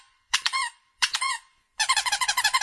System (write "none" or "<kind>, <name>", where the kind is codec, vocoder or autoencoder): vocoder, Vocos